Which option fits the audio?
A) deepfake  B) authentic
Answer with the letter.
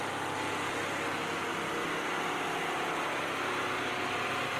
B